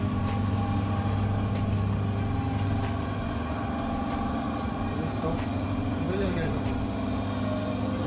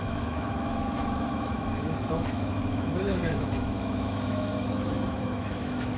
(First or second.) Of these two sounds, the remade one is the second